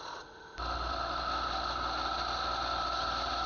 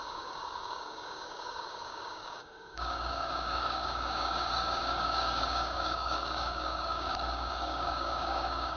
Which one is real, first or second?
first